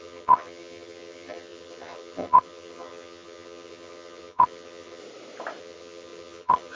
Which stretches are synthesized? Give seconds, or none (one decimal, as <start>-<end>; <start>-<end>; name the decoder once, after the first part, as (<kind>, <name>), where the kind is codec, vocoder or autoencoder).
0.0-5.0 (vocoder, HiFi-GAN); 5.6-6.8